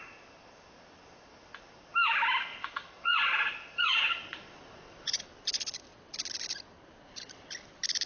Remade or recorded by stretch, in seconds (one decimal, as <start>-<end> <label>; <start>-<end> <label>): 0.0-2.5 recorded; 2.5-5.2 remade; 5.2-8.1 recorded